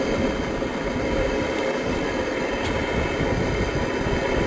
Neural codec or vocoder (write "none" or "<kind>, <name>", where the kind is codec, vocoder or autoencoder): none